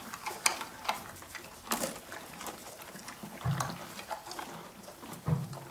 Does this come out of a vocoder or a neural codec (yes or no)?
no